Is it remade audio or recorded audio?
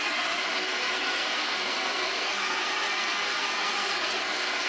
remade